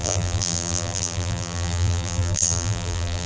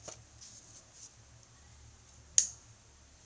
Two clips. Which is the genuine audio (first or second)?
second